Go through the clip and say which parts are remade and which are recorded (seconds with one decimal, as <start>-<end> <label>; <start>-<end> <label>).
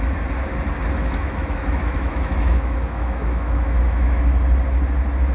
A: 0.0-1.0 recorded; 1.0-4.2 remade; 4.2-5.3 recorded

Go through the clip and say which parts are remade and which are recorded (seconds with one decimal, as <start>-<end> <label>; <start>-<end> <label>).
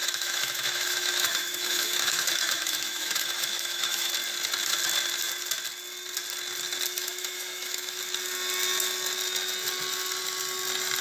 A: 0.0-4.1 remade; 4.1-7.0 recorded; 7.0-8.0 remade; 8.0-11.0 recorded